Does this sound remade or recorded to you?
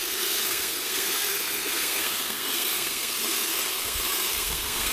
remade